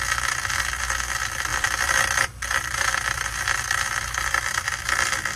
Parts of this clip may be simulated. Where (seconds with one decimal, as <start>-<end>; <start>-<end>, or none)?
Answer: 1.5-4.7

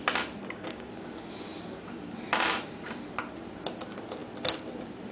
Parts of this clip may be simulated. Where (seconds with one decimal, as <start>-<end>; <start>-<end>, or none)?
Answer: 0.4-0.9

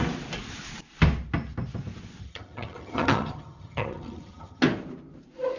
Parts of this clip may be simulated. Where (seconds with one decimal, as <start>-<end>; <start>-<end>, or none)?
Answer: 2.2-4.6

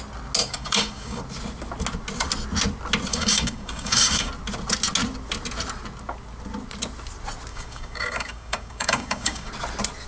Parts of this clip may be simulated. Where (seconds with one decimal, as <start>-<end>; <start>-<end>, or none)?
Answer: 0.4-1.2; 3.1-4.3; 7.5-9.5

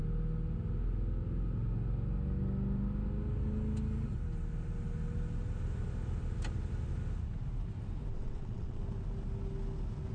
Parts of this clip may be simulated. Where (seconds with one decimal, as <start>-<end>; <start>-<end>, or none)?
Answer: 8.1-8.8

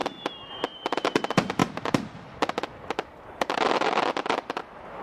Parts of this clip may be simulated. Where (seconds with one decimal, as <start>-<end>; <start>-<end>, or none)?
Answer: none

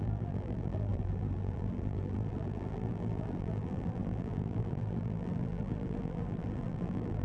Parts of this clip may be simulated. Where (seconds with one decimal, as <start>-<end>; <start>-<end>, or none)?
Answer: 0.0-7.2